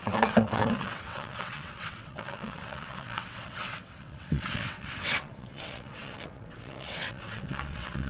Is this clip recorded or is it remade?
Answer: remade